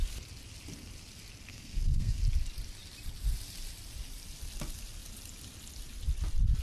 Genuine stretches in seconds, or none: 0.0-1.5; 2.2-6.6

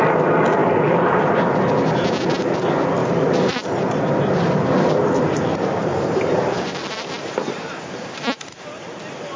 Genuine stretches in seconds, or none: 0.0-0.6; 1.3-3.0; 8.1-9.4

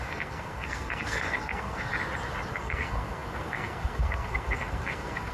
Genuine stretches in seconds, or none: 1.9-2.5

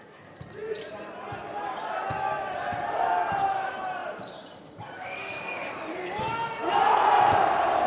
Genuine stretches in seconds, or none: 0.0-4.0; 5.4-7.9

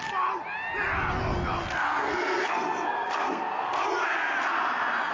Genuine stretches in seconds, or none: 0.0-1.8; 3.7-5.1

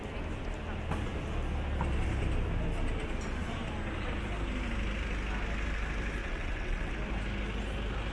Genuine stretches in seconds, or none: 0.0-6.2; 6.9-8.1

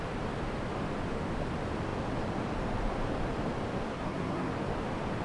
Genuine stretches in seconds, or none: 0.0-3.9; 4.5-5.2

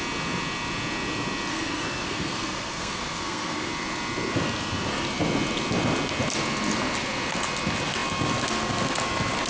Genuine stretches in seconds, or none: 0.0-1.5; 3.7-9.5